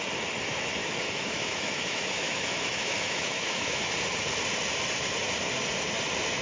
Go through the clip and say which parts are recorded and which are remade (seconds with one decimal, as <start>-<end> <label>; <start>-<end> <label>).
0.0-0.8 recorded; 0.8-3.9 remade; 3.9-6.4 recorded